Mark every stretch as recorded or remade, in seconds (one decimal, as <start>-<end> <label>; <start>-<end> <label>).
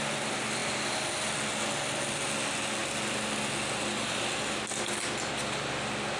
0.0-6.2 recorded